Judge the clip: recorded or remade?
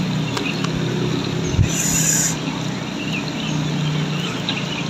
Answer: recorded